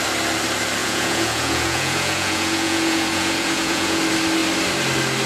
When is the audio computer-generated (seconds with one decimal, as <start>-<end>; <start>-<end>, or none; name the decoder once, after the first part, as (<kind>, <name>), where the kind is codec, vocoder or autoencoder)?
0.8-4.0 (vocoder, Vocos)